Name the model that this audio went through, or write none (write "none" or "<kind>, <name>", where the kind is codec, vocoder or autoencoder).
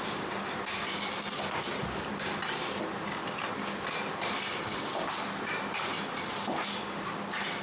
vocoder, BigVGAN v2